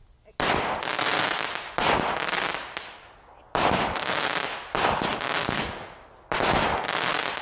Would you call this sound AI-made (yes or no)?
no